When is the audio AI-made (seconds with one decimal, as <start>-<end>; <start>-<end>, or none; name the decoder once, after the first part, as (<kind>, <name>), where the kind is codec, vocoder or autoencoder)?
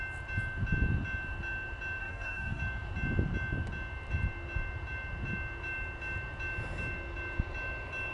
2.0-2.6 (codec, SNAC)